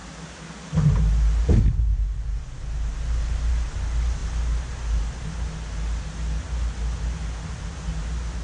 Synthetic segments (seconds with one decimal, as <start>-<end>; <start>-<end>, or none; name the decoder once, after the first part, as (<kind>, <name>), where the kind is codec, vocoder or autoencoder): none